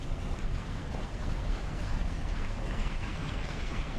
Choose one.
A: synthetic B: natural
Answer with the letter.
A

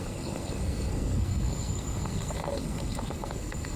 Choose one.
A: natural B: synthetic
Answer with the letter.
B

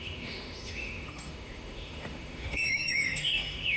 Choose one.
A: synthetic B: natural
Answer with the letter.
A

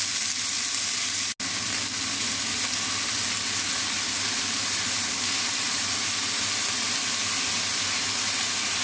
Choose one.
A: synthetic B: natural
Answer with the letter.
B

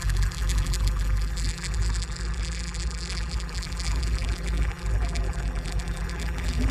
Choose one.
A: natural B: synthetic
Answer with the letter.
B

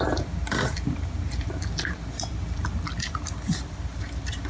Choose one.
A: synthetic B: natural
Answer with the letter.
A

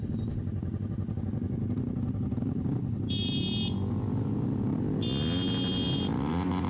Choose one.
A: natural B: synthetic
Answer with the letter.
A